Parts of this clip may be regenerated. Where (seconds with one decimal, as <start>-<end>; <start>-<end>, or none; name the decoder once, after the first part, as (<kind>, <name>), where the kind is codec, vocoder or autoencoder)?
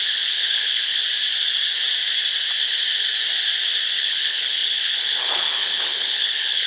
0.0-1.0 (codec, HILCodec); 3.9-6.7